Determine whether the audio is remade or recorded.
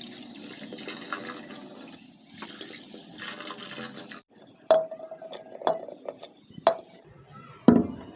recorded